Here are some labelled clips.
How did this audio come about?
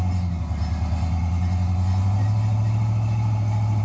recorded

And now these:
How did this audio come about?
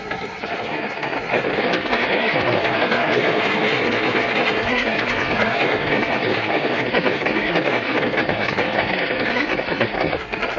remade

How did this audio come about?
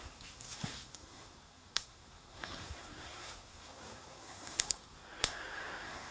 remade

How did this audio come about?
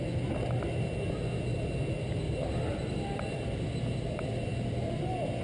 recorded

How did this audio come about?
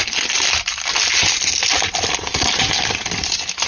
recorded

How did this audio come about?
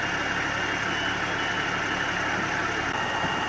recorded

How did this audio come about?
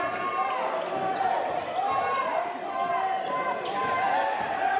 recorded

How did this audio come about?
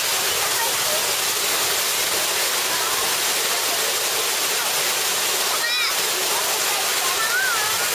recorded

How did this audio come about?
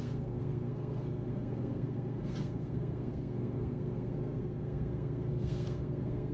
remade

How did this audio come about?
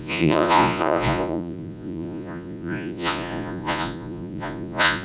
remade